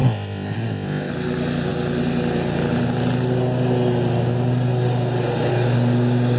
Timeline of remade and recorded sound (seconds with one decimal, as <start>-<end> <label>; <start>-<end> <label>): 0.0-1.1 remade; 1.1-6.4 recorded